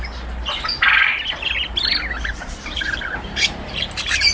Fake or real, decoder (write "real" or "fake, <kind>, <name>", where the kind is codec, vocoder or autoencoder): real